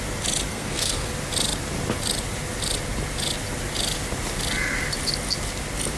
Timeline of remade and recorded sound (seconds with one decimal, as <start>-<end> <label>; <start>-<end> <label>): 0.0-0.5 recorded; 0.5-1.1 remade; 1.1-6.0 recorded